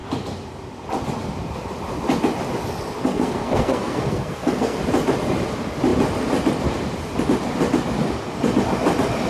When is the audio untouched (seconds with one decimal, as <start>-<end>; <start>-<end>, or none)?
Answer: 0.0-3.0; 4.8-9.3